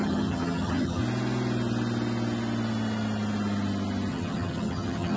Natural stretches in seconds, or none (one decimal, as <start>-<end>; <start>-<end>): 1.0-4.1